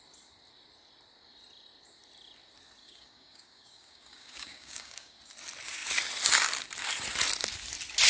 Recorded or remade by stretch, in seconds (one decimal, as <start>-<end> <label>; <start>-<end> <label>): 0.0-2.8 recorded; 2.8-5.2 remade; 5.2-8.1 recorded